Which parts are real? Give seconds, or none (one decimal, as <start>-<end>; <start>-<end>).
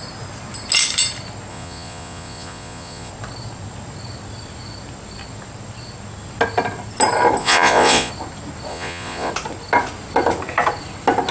0.0-1.5; 3.1-7.4; 8.1-8.7; 9.3-11.3